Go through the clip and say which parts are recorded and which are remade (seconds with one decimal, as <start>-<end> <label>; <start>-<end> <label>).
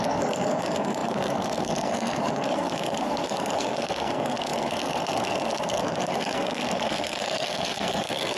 0.0-8.4 remade